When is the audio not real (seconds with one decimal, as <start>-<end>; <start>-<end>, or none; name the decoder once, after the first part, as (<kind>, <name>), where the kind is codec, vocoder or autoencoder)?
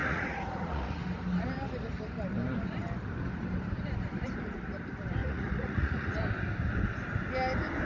0.0-1.0 (vocoder, Vocos); 5.2-6.2